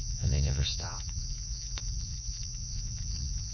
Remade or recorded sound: remade